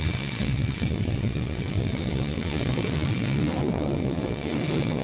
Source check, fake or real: fake